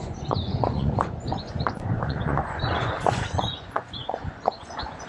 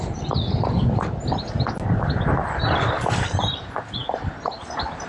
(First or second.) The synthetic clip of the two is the first